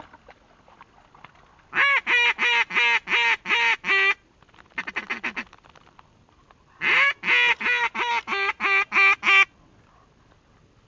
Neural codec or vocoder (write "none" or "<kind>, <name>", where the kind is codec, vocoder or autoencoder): none